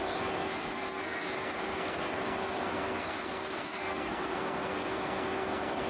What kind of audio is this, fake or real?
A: fake